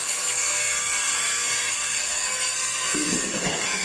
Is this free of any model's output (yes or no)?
no